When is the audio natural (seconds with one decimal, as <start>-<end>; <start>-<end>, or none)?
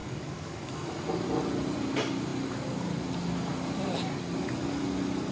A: 0.9-5.3